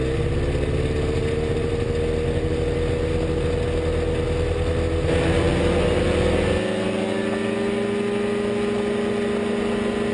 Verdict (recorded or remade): recorded